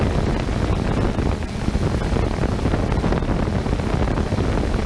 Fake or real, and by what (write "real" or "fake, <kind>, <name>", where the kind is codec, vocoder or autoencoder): real